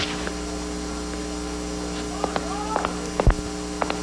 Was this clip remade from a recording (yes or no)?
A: no